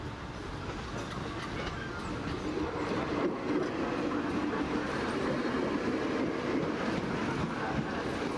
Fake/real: real